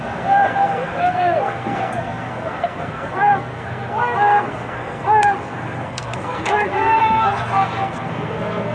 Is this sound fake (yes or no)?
yes